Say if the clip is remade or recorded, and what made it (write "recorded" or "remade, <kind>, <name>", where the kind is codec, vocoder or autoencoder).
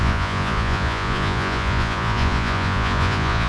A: remade, vocoder, Vocos